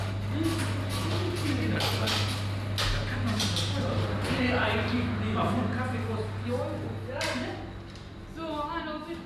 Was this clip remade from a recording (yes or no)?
no